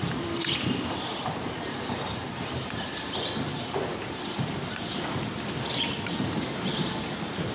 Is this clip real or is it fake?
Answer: fake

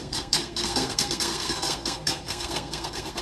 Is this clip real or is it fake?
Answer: fake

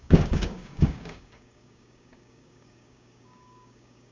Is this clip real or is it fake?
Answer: fake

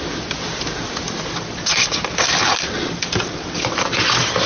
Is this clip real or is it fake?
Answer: real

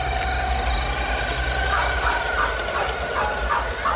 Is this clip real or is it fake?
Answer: real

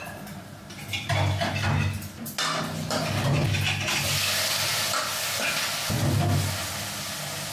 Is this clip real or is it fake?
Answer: real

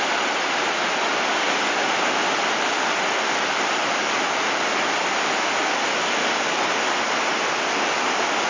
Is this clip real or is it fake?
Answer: real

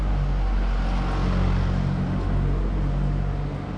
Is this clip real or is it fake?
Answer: real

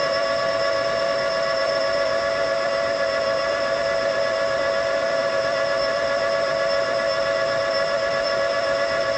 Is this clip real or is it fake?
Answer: fake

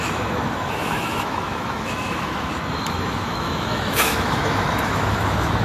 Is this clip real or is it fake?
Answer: fake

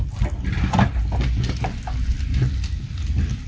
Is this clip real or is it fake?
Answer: real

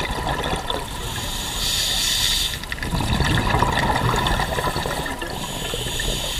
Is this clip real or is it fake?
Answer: real